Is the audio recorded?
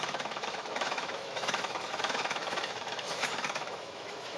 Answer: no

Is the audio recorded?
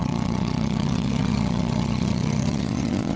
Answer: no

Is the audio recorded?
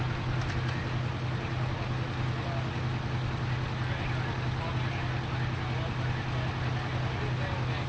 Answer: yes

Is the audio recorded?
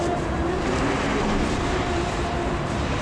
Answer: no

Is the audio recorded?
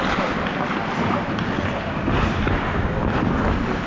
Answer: yes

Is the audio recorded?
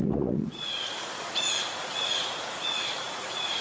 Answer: no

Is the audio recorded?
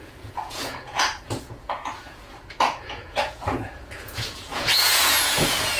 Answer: no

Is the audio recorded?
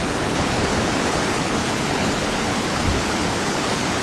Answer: no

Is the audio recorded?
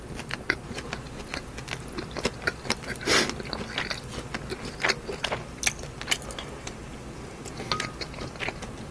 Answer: yes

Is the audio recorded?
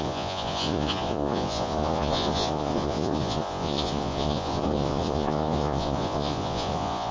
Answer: no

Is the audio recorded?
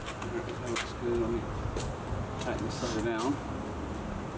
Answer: yes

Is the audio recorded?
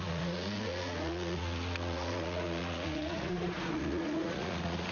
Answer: no